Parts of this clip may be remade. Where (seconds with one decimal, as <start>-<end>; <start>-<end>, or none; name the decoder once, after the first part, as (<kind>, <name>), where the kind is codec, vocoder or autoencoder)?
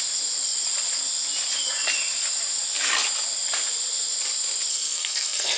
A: 4.7-5.6 (codec, SNAC)